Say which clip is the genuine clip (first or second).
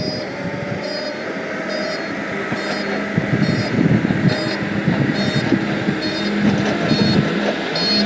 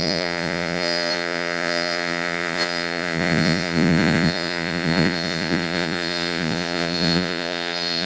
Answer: first